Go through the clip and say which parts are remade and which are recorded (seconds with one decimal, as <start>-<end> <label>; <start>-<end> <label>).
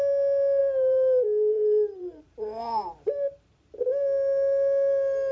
0.0-0.6 recorded; 0.6-3.8 remade; 3.8-5.3 recorded